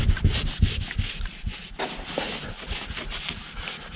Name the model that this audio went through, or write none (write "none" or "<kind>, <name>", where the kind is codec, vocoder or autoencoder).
none